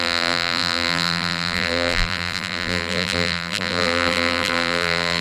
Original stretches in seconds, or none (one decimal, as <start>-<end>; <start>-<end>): none